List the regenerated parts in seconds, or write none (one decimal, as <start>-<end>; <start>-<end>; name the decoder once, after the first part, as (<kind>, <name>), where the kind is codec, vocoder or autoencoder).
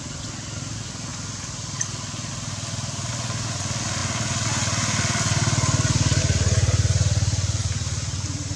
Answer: none